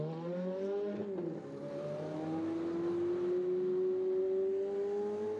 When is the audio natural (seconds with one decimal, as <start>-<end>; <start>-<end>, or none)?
0.0-5.4

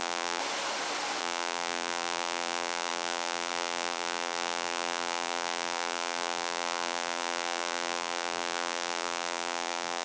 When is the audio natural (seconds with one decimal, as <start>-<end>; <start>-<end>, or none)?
0.4-1.2

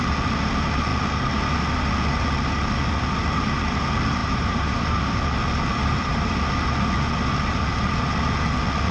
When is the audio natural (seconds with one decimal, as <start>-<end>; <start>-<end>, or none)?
0.0-4.2; 5.1-5.7; 6.3-8.9

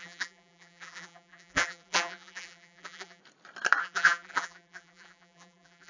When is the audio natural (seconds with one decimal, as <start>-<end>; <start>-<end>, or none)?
3.2-3.8